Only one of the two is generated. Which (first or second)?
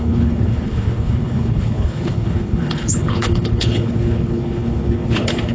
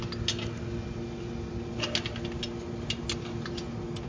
first